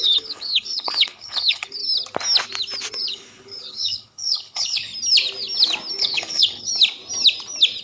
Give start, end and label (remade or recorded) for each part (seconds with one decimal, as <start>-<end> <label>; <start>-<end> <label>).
0.0-1.8 remade; 1.8-3.1 recorded; 3.1-4.9 remade; 4.9-6.0 recorded; 6.0-6.7 remade; 6.7-7.8 recorded